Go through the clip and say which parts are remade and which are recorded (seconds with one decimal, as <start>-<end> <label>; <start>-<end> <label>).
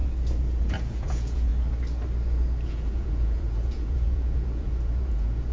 0.0-0.6 recorded; 0.6-1.5 remade; 1.5-2.7 recorded; 2.7-5.5 remade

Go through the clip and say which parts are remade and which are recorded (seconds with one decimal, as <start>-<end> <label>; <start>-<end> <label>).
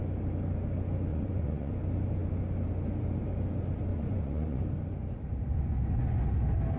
0.0-1.1 recorded; 1.1-1.7 remade; 1.7-3.9 recorded; 3.9-4.6 remade; 4.6-6.8 recorded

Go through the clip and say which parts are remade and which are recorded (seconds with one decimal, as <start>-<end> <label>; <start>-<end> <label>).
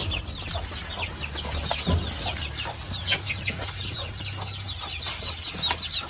0.0-3.0 recorded; 3.0-4.2 remade; 4.2-6.1 recorded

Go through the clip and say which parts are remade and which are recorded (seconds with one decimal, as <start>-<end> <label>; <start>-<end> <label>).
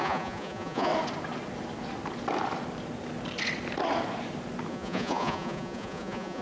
0.0-0.9 remade; 0.9-4.7 recorded; 4.7-6.4 remade